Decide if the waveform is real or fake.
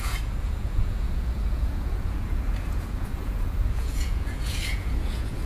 fake